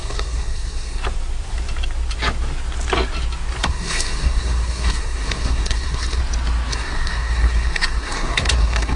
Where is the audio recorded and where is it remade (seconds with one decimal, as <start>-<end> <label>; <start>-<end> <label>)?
0.0-1.0 remade; 1.0-3.6 recorded; 3.6-6.2 remade; 6.2-6.7 recorded; 6.7-9.0 remade